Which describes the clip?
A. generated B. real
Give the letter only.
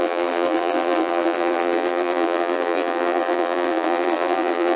A